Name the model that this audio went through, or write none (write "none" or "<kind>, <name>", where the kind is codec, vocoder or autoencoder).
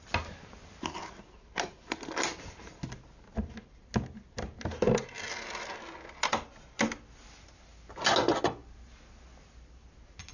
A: none